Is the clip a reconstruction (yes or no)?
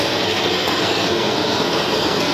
yes